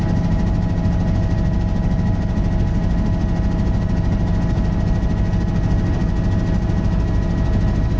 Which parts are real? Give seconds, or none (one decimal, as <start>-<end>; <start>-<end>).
0.0-8.0